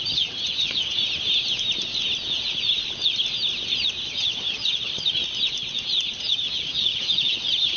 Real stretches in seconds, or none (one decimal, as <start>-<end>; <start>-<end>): 1.0-4.1; 5.2-6.2